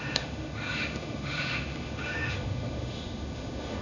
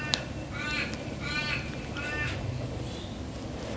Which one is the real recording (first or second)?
second